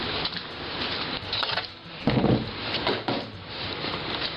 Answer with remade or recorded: remade